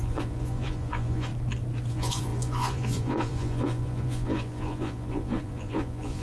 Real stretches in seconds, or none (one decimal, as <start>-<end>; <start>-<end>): 1.3-1.9